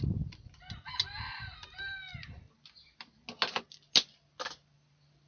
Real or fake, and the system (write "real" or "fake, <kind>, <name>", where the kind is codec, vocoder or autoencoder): real